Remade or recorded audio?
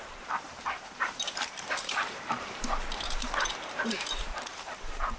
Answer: remade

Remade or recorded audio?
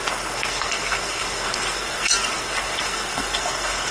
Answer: remade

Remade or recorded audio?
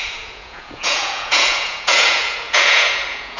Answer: remade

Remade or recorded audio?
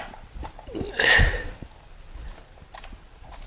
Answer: recorded